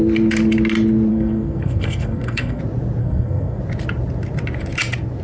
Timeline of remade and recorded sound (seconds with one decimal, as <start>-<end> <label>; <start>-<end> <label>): 0.0-1.1 recorded; 1.1-2.6 remade; 2.6-3.0 recorded; 3.0-3.6 remade; 3.6-5.2 recorded